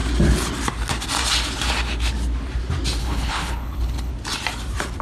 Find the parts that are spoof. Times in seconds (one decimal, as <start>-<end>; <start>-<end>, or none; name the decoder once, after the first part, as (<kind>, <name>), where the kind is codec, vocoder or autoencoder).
3.0-4.1 (codec, HILCodec)